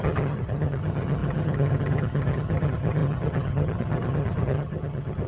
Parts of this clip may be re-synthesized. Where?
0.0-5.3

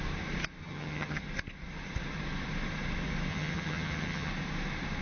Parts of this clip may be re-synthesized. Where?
0.6-1.2; 3.3-4.3

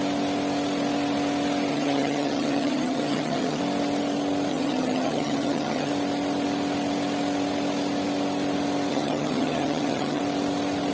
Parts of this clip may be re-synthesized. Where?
1.7-3.6; 4.5-5.9; 8.9-10.2